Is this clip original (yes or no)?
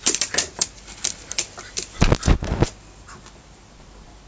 no